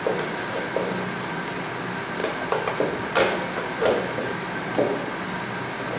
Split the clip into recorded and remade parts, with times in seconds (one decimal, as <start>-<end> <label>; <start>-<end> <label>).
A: 0.0-6.0 recorded

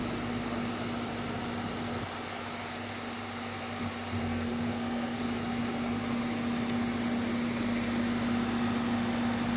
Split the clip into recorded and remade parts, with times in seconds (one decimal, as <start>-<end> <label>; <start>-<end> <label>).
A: 0.0-4.2 recorded; 4.2-5.2 remade; 5.2-9.6 recorded

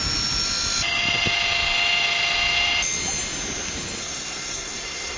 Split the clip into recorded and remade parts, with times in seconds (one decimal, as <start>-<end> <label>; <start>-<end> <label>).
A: 0.0-4.0 recorded; 4.0-5.2 remade

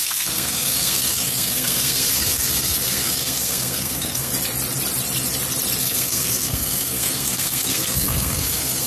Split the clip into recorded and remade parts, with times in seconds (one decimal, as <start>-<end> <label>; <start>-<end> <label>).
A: 0.0-4.3 remade; 4.3-5.8 recorded; 5.8-8.9 remade